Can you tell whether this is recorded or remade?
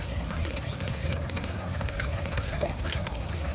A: remade